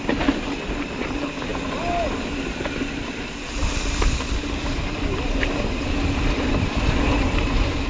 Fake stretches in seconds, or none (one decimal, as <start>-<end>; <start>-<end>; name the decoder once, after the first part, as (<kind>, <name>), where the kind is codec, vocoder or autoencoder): none